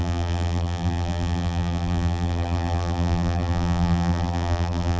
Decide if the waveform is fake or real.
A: fake